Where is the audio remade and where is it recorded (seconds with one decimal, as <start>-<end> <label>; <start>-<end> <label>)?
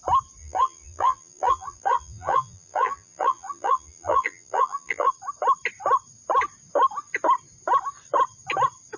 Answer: 0.0-0.4 recorded; 0.4-5.1 remade; 5.1-9.0 recorded